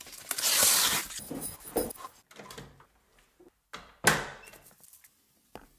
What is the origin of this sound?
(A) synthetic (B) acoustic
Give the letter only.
B